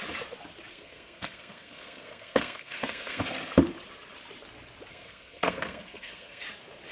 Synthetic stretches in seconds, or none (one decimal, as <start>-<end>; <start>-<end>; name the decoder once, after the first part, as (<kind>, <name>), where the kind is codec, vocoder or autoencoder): 0.7-3.2 (codec, SNAC); 4.9-6.4